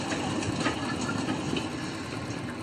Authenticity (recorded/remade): recorded